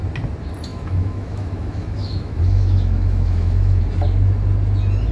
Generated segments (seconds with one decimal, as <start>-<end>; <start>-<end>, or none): 0.7-3.8